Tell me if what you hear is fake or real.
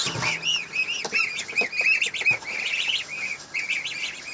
real